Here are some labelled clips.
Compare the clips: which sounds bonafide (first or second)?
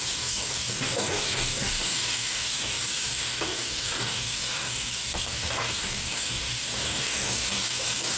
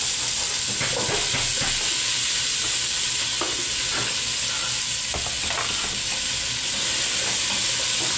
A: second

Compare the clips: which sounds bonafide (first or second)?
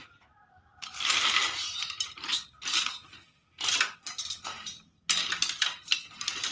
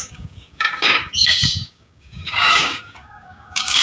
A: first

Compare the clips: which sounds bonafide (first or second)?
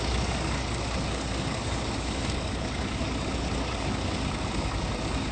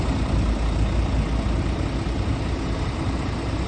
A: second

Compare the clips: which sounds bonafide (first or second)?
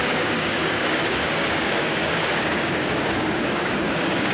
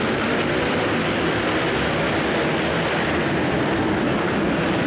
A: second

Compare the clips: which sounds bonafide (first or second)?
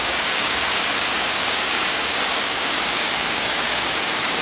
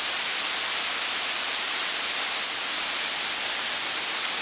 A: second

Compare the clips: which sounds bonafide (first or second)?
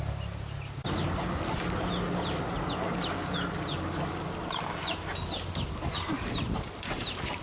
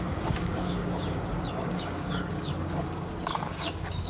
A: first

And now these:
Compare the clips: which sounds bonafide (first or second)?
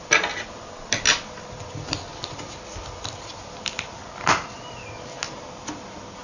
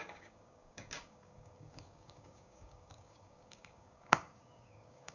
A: first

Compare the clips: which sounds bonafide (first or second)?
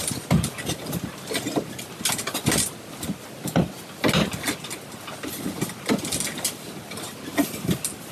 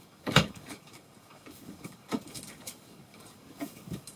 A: first